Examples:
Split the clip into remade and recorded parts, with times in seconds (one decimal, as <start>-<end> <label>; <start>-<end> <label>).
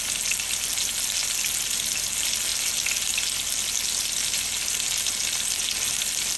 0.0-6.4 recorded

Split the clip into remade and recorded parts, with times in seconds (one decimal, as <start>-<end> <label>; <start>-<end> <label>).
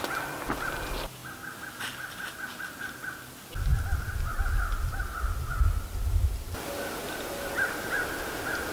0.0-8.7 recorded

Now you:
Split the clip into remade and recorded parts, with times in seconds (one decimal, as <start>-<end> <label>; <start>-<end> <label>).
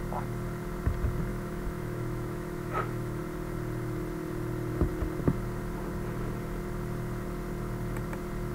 0.0-1.3 recorded; 1.3-3.2 remade; 3.2-8.5 recorded